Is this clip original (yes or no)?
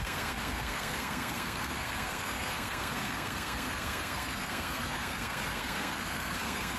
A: no